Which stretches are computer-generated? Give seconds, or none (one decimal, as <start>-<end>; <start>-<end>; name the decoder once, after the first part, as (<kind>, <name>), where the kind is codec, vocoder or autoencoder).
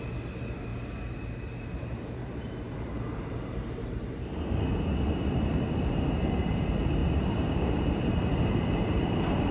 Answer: 0.7-4.6 (vocoder, BigVGAN v2); 7.0-9.5